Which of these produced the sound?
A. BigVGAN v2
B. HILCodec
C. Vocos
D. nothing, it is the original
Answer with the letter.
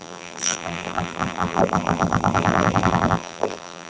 A